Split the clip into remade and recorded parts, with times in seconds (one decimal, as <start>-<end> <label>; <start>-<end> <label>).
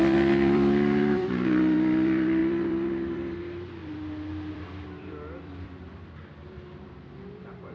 0.0-7.7 remade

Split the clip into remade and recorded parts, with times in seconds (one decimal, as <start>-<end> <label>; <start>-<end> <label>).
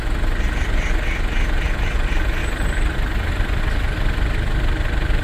0.0-2.4 recorded; 2.4-3.6 remade; 3.6-5.2 recorded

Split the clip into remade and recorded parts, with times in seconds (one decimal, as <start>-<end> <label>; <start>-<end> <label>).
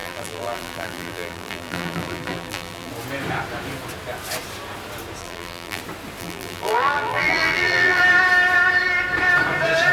0.0-2.9 remade; 2.9-5.2 recorded; 5.2-5.8 remade; 5.8-6.2 recorded; 6.2-8.0 remade; 8.0-9.9 recorded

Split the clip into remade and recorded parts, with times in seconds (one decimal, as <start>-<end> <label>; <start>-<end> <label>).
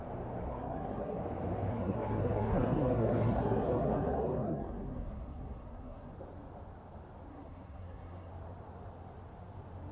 0.0-0.5 recorded; 0.5-1.2 remade; 1.2-1.7 recorded; 1.7-6.1 remade; 6.1-7.3 recorded; 7.3-8.3 remade; 8.3-9.9 recorded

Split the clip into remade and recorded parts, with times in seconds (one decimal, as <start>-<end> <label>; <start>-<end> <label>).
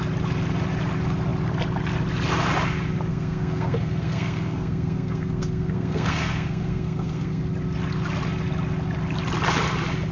0.0-3.1 recorded; 3.1-7.4 remade; 7.4-10.1 recorded